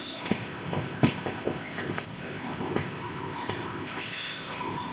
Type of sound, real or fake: fake